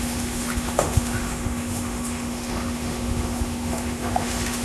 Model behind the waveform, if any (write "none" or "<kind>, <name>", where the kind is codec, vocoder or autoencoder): autoencoder, DAC-VAE